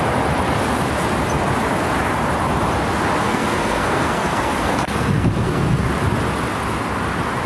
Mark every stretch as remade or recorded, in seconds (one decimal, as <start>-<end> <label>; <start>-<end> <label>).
0.0-3.2 recorded; 3.2-5.9 remade; 5.9-7.5 recorded